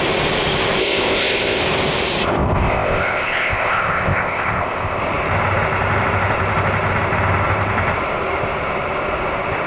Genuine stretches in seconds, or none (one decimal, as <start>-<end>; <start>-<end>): 0.0-0.8; 1.6-2.3; 5.0-9.7